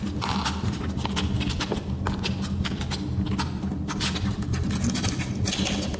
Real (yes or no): yes